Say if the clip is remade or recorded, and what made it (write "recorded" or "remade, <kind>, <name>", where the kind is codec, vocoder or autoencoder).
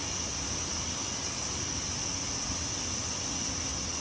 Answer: recorded